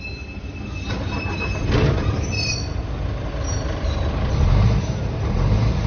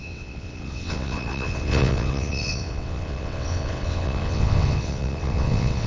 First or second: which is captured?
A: first